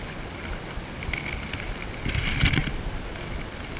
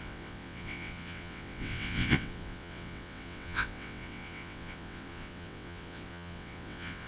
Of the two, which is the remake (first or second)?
second